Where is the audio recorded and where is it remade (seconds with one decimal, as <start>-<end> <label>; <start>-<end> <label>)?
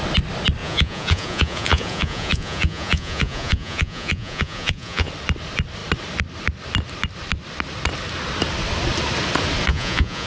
0.0-0.6 recorded; 0.6-5.1 remade; 5.1-9.7 recorded; 9.7-10.3 remade